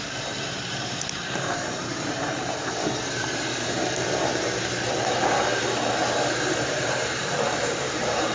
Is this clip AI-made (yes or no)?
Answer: yes